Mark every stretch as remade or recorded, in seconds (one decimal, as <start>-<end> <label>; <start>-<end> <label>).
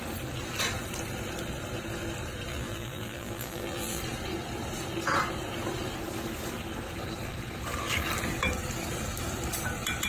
0.0-2.5 recorded; 2.5-4.0 remade; 4.0-10.1 recorded